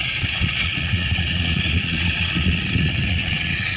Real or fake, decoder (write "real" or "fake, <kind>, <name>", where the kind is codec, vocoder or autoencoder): fake, vocoder, Vocos